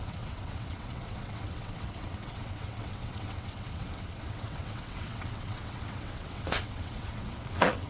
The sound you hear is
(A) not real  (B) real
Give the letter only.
A